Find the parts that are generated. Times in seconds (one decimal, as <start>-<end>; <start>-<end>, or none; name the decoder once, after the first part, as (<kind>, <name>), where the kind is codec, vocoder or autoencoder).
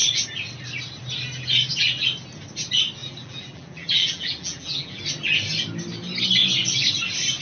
3.0-5.0 (vocoder, BigVGAN v2)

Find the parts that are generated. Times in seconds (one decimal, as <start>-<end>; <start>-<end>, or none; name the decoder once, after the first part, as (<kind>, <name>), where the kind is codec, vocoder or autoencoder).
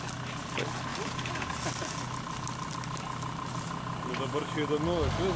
none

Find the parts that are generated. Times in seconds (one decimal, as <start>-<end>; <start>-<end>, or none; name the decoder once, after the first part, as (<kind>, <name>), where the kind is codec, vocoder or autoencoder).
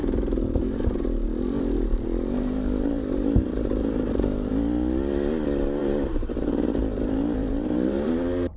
0.0-4.5 (vocoder, BigVGAN v2); 5.8-8.6